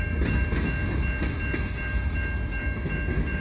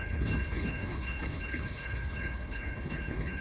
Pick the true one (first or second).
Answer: first